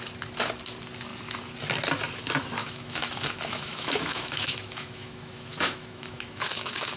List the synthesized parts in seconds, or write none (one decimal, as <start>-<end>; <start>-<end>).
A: 2.6-7.0

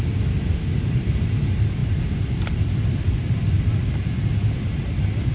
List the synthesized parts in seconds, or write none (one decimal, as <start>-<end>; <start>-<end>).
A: 1.8-5.3

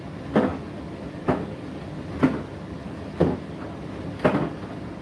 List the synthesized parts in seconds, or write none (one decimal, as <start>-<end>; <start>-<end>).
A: none

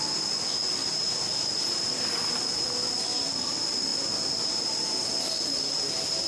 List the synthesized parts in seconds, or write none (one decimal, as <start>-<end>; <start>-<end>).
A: none

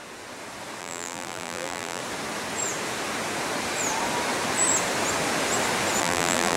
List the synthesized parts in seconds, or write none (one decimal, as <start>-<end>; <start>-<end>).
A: 0.8-2.0; 6.0-6.6

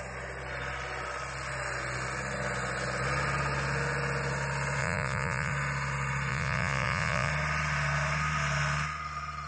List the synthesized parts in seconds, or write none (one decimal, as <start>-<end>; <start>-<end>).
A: 4.8-5.5; 6.3-7.3

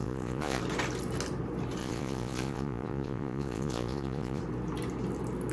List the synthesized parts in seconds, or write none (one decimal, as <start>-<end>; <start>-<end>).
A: 0.0-0.6; 1.8-4.4